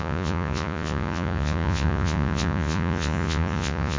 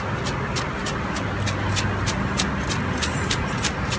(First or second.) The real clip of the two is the second